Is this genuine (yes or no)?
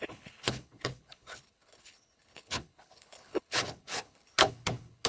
no